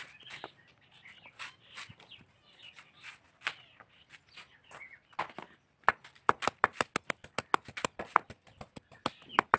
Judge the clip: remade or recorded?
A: recorded